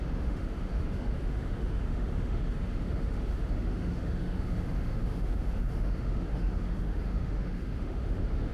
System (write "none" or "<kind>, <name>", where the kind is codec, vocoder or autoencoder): autoencoder, DAC-VAE